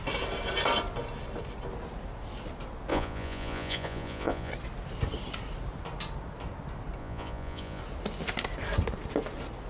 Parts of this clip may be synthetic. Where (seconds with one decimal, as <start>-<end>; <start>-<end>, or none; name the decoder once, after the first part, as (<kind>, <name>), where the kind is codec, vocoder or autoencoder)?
2.9-4.5 (vocoder, Vocos); 7.0-7.8